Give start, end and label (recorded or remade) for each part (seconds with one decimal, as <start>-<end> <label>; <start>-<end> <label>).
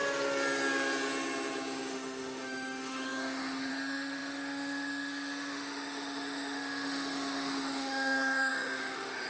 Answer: 0.0-1.9 recorded; 1.9-9.3 remade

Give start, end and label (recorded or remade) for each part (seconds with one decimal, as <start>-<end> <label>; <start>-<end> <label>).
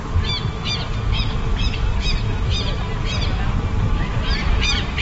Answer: 0.0-5.0 recorded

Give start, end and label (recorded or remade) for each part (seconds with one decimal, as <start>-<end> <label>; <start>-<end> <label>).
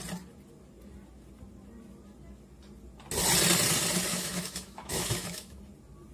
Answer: 0.0-4.1 recorded; 4.1-5.6 remade; 5.6-6.1 recorded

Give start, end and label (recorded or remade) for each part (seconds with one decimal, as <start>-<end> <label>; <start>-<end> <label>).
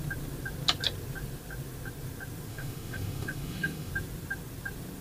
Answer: 0.0-2.5 recorded; 2.5-3.9 remade; 3.9-5.0 recorded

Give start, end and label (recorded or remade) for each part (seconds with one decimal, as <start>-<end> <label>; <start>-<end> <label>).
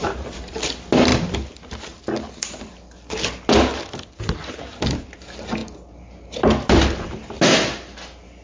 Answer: 0.0-8.4 recorded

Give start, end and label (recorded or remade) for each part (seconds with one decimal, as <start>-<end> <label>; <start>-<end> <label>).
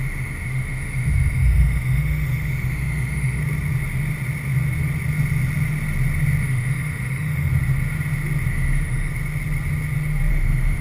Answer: 0.0-3.4 remade; 3.4-6.4 recorded; 6.4-7.5 remade; 7.5-8.5 recorded; 8.5-9.1 remade; 9.1-10.3 recorded; 10.3-10.8 remade